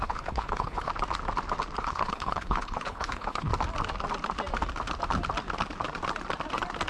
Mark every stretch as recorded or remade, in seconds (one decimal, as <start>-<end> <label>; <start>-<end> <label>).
0.0-0.9 remade; 0.9-1.8 recorded; 1.8-3.5 remade; 3.5-6.9 recorded